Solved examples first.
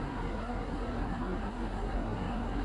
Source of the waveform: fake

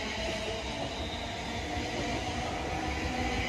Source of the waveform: real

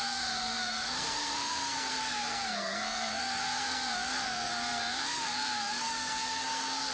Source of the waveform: fake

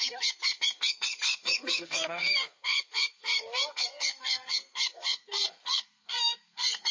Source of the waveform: fake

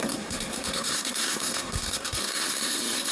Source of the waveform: fake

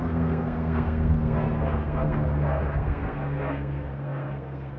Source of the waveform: fake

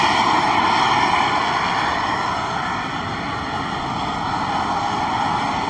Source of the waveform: real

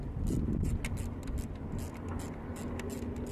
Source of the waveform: real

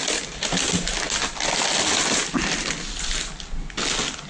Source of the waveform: real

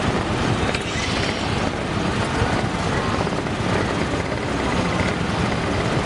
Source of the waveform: real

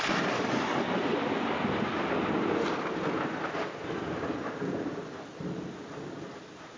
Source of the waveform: real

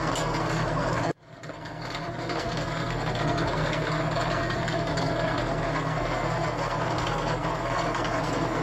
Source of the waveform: fake